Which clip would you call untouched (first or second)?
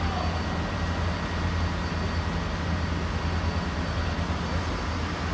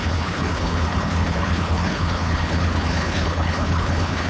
first